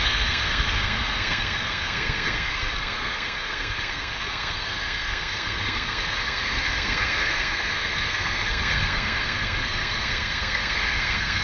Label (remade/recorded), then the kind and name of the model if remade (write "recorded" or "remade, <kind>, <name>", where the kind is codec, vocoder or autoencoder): remade, codec, SNAC